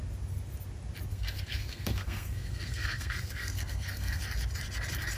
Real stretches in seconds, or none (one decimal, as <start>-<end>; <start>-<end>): 0.0-1.1; 4.2-5.2